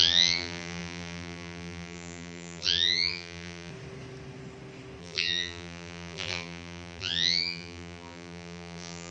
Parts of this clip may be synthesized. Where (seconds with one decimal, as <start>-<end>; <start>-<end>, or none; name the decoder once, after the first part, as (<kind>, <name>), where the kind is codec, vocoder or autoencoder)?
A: 0.0-3.7 (vocoder, BigVGAN v2); 5.0-9.1